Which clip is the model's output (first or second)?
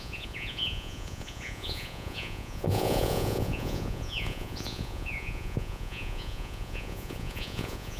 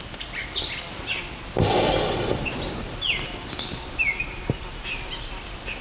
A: first